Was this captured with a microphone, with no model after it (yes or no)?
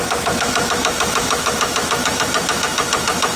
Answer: no